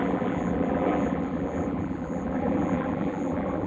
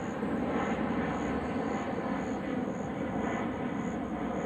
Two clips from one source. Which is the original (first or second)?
second